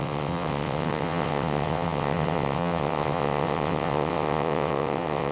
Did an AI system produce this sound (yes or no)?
yes